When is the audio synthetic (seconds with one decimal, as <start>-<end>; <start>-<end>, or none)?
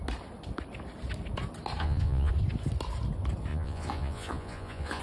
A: 1.8-2.3; 3.5-5.0